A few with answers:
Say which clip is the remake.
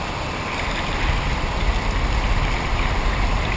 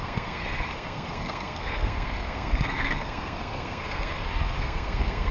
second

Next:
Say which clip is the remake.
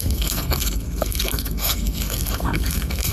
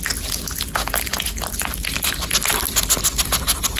first